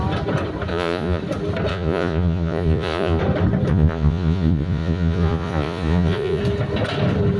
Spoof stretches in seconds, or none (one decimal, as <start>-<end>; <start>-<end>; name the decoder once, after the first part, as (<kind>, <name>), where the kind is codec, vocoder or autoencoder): 0.7-1.2 (vocoder, Vocos); 1.7-3.2; 3.7-6.4